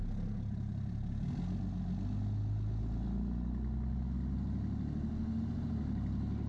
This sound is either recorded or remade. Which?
recorded